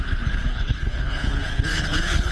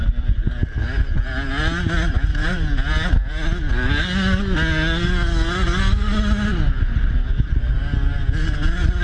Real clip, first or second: second